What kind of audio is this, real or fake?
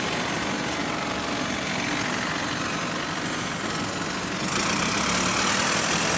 real